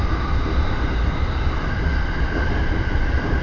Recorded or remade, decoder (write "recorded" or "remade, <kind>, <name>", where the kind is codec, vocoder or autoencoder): recorded